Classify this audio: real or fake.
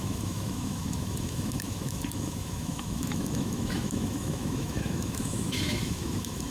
fake